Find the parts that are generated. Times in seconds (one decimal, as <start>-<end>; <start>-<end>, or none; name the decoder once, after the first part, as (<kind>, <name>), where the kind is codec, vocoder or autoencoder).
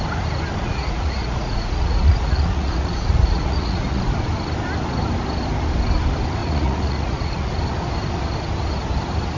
0.6-4.0 (vocoder, Vocos); 6.4-7.5